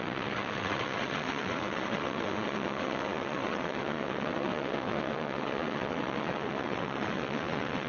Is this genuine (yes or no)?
no